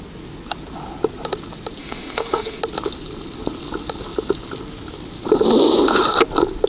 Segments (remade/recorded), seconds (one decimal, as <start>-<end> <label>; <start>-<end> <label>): 0.0-1.8 recorded; 1.8-2.6 remade; 2.6-6.7 recorded